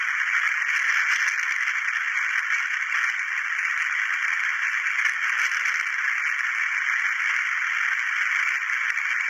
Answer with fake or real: real